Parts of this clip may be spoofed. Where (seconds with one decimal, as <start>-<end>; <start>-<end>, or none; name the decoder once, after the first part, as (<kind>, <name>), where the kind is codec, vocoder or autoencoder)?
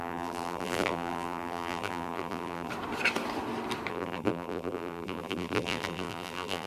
0.0-2.7 (vocoder, BigVGAN v2); 3.9-6.7